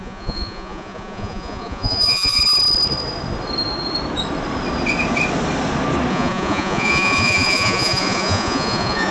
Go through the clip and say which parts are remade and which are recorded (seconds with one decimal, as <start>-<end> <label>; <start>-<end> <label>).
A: 0.0-2.4 remade; 2.4-6.1 recorded; 6.1-9.1 remade